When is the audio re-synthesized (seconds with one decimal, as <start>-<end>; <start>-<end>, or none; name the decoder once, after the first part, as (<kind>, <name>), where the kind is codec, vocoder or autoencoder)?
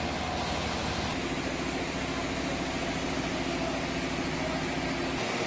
none